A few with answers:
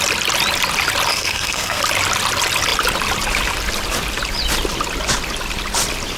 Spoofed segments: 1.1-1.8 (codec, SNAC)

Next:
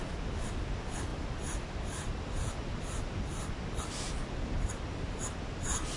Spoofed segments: none

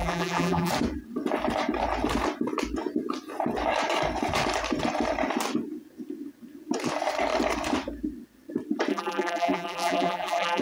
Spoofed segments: 0.0-0.7 (vocoder, BigVGAN v2); 8.9-10.6